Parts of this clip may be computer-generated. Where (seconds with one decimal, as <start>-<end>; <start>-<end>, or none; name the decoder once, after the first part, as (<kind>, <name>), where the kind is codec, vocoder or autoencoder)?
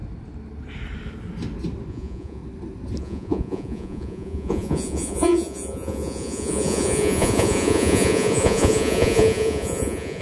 1.9-2.4 (vocoder, Vocos); 3.0-10.2